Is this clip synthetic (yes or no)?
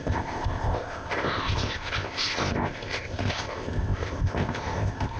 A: yes